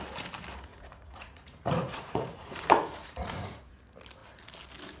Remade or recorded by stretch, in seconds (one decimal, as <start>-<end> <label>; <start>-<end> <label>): 0.0-0.7 recorded; 0.7-3.7 remade; 3.7-5.0 recorded